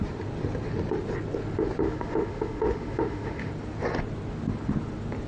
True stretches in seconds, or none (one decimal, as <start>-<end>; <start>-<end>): 0.0-1.8; 3.5-5.3

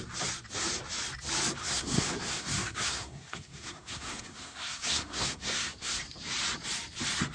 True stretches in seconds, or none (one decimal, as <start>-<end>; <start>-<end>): 0.0-1.6; 6.0-7.3